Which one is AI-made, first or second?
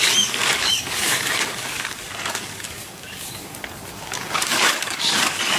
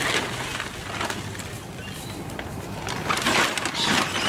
first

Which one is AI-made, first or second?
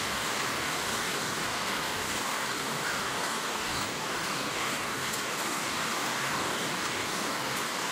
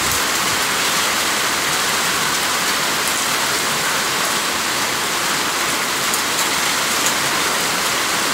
first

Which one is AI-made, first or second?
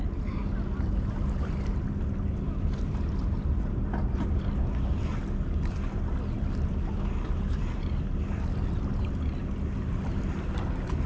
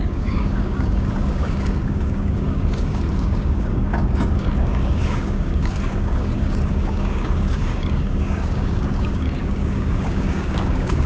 second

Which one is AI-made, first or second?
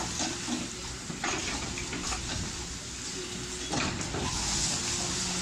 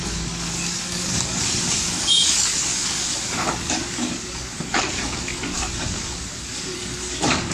second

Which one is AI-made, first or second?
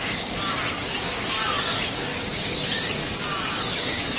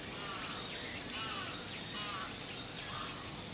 first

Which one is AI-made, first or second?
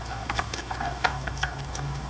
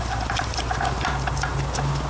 first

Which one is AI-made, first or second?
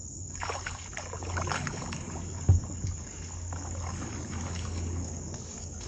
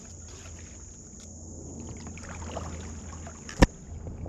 first